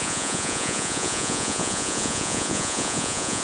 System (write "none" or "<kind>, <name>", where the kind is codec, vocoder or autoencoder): vocoder, Vocos